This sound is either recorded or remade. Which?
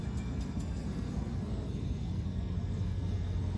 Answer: remade